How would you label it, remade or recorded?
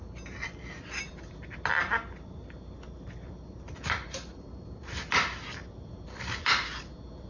recorded